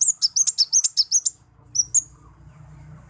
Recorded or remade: recorded